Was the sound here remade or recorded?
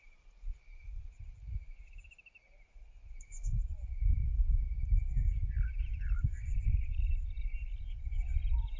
recorded